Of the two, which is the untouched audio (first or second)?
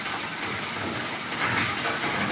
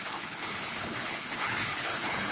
first